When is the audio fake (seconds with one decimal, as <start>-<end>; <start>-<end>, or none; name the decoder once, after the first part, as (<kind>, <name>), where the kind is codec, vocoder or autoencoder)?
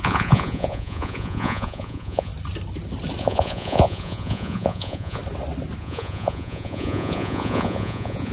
0.0-2.3 (vocoder, Vocos); 3.2-5.2; 5.8-8.3